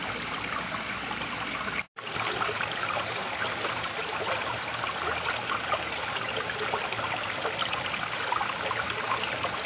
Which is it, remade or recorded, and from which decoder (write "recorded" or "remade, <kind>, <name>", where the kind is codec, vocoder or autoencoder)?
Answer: recorded